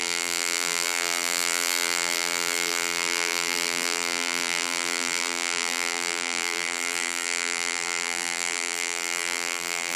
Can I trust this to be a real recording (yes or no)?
no